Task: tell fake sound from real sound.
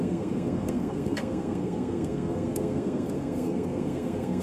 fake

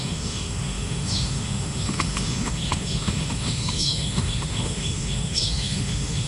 fake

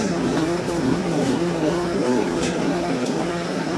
fake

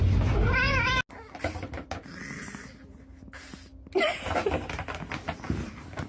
real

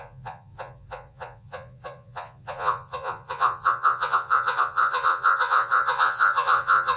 fake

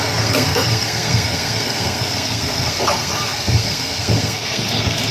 fake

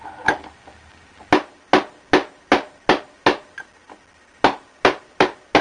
real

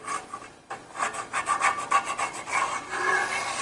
real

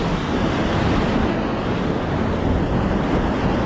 real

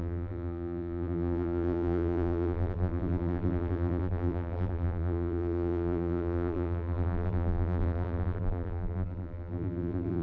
fake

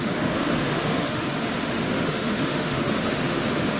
fake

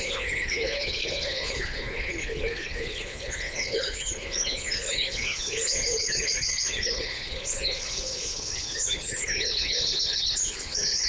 fake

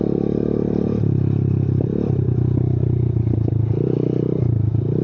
real